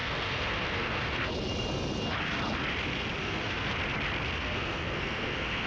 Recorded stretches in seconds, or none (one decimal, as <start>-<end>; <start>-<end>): 1.3-3.2; 3.7-4.4